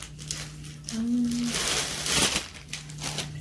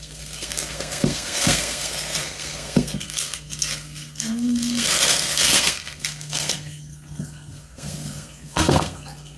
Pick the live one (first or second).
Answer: first